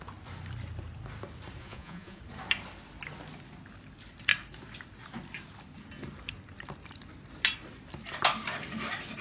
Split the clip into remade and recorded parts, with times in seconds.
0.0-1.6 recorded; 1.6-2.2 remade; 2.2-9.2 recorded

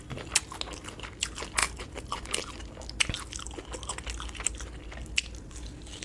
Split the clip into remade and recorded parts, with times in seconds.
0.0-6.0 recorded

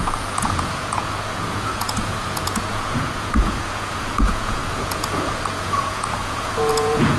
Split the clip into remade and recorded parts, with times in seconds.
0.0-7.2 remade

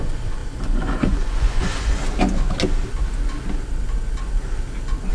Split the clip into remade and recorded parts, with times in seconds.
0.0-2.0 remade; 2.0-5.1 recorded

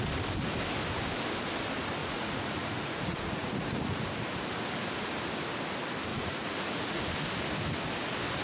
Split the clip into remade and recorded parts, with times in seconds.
0.0-2.0 recorded; 2.0-4.0 remade; 4.0-6.1 recorded; 6.1-7.1 remade; 7.1-8.4 recorded

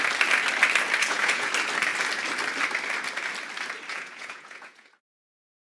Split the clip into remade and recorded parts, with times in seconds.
0.0-1.0 recorded; 1.0-1.5 remade; 1.5-3.9 recorded; 3.9-4.9 remade; 4.9-5.6 recorded

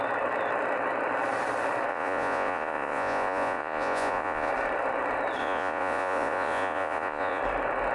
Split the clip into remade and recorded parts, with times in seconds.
0.0-1.9 recorded; 1.9-4.5 remade; 4.5-5.4 recorded; 5.4-7.4 remade; 7.4-7.9 recorded